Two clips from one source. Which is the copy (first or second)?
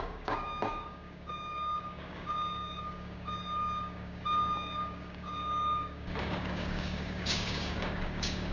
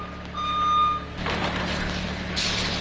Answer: first